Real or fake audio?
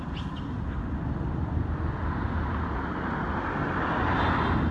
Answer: real